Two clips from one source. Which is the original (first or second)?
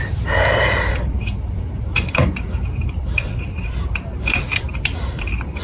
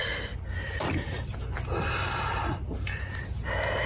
second